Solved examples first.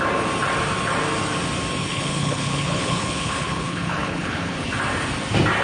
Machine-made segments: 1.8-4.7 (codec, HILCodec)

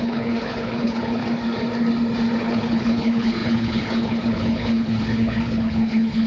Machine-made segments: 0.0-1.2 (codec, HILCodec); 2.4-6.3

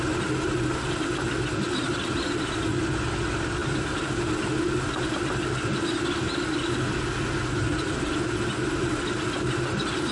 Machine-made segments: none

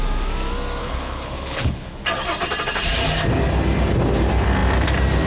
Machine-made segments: 0.8-2.0 (codec, HILCodec)